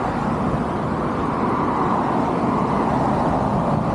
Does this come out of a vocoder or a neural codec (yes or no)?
no